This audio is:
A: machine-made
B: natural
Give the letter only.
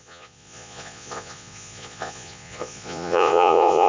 A